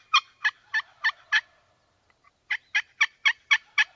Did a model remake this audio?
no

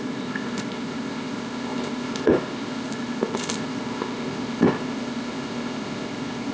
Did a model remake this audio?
yes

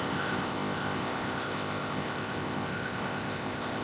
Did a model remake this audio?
yes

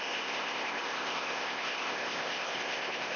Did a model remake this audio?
yes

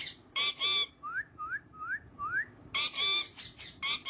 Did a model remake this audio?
no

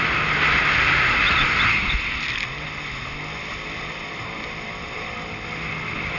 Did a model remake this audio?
no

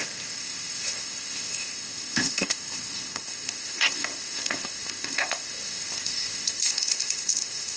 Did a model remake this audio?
yes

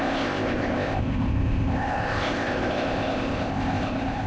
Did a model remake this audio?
yes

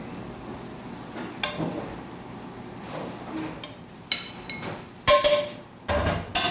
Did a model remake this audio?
no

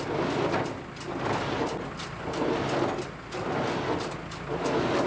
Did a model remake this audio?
no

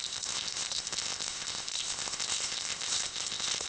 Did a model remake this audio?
yes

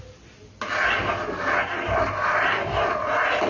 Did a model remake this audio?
no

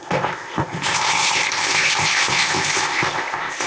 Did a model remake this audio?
yes